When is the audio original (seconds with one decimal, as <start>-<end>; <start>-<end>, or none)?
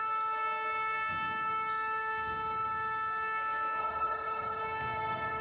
0.0-3.8; 4.6-5.4